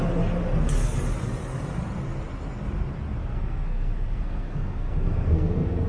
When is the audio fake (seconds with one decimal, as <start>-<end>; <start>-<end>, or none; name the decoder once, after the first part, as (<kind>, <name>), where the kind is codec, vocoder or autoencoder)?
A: 3.2-5.9 (codec, SNAC)